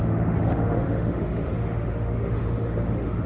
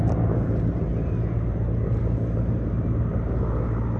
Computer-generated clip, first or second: first